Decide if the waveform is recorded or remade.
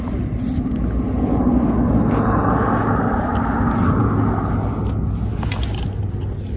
recorded